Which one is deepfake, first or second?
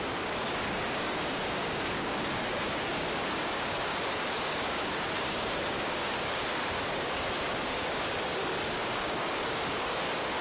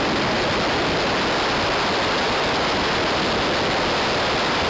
first